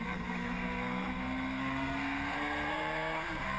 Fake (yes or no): yes